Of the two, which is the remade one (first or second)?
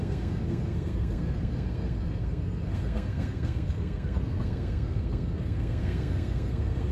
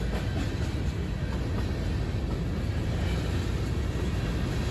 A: first